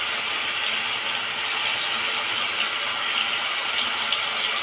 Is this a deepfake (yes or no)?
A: no